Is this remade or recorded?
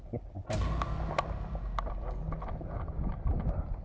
recorded